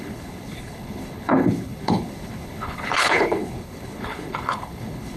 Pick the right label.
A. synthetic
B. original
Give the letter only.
A